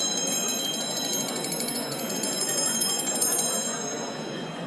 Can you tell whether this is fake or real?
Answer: fake